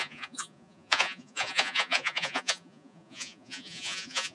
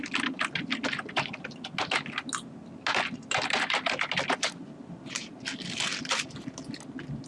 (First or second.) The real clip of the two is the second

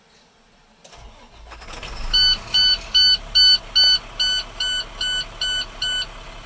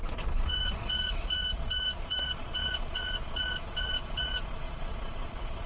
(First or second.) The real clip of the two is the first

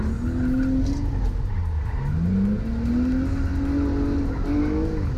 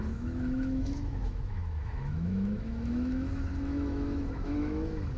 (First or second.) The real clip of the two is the first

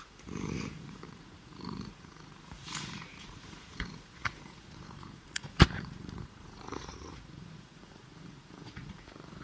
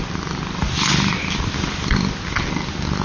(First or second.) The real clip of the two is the second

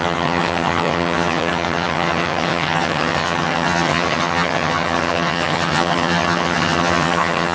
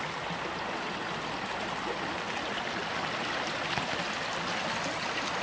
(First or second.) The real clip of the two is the second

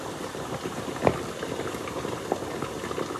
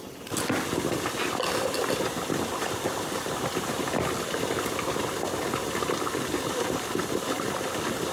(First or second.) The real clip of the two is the first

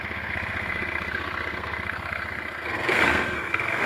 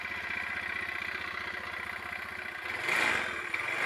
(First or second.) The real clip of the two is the second